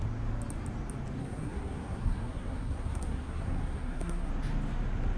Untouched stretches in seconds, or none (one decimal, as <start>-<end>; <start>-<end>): 0.0-1.2; 4.3-5.2